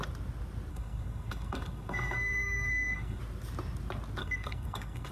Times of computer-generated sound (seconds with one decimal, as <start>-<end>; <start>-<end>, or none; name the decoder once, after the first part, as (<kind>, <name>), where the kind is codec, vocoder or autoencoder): 0.7-3.2 (codec, SNAC); 4.2-5.1